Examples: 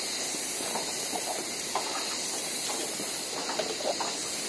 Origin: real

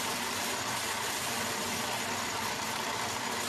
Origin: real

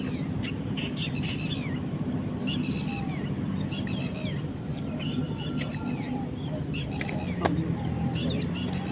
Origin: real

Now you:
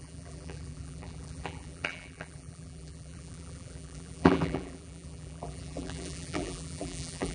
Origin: fake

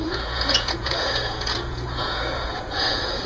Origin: fake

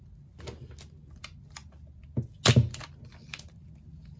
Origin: real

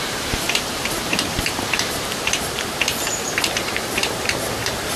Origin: fake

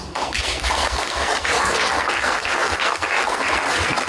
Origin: fake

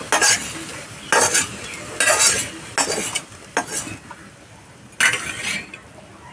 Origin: real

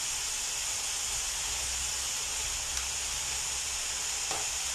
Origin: real